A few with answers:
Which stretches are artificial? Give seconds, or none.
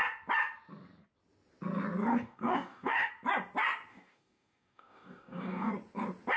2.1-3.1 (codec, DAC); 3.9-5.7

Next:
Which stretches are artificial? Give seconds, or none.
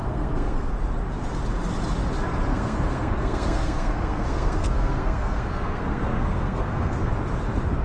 0.0-0.7 (codec, SNAC); 2.5-7.1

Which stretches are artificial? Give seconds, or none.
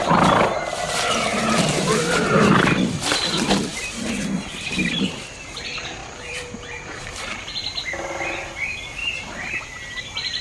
1.3-2.7 (vocoder, BigVGAN v2); 6.0-7.0; 9.0-9.6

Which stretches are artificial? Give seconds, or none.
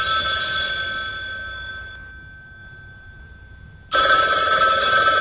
2.6-4.2 (vocoder, BigVGAN v2)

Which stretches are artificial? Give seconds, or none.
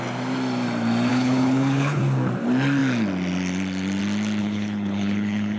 1.1-2.0 (codec, HILCodec); 4.4-5.6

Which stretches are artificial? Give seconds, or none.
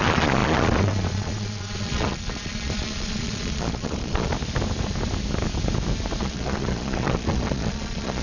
0.0-4.3 (vocoder, Vocos); 6.2-8.2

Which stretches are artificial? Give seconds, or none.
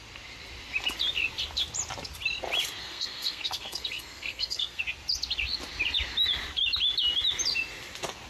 2.8-4.8 (codec, SNAC)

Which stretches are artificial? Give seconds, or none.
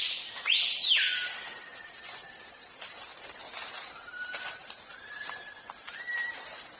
0.0-6.8 (vocoder, BigVGAN v2)